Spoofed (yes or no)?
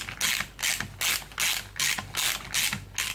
no